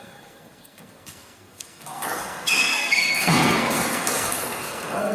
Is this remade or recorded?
remade